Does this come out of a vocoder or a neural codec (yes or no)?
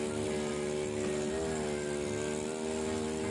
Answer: no